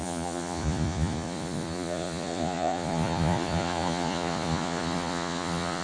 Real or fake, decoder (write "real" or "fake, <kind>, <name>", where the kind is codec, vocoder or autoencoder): fake, vocoder, Vocos